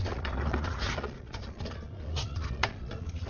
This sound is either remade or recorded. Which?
remade